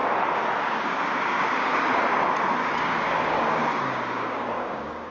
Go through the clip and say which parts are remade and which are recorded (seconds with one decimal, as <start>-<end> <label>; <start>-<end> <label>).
0.0-0.6 recorded; 0.6-1.7 remade; 1.7-2.6 recorded; 2.6-5.1 remade